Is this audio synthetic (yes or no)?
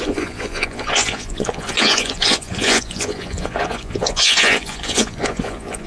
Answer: yes